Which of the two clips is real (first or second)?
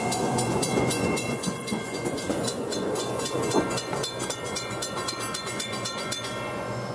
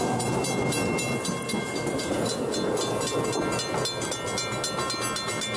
second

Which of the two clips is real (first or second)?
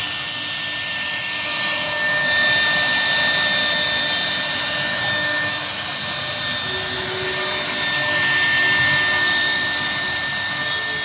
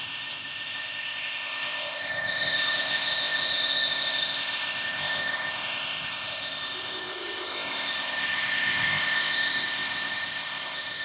first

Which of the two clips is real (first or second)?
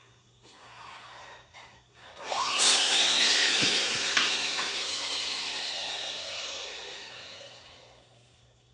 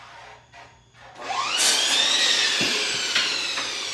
second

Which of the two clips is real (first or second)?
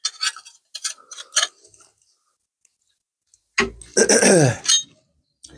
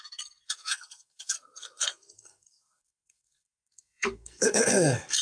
first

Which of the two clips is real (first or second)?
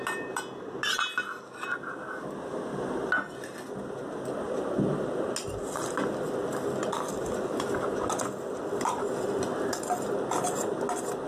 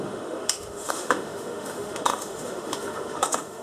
first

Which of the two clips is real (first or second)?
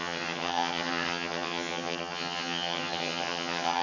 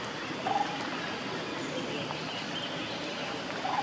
second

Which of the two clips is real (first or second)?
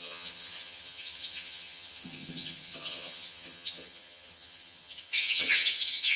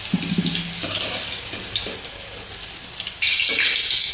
second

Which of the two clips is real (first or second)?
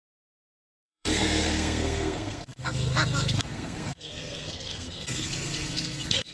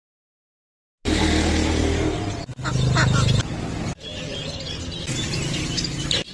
second